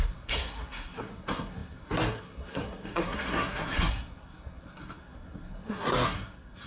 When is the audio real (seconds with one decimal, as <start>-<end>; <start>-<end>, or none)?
none